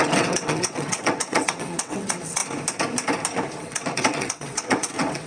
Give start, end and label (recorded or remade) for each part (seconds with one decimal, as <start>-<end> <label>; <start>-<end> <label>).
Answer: 0.0-2.4 remade; 2.4-3.6 recorded; 3.6-5.3 remade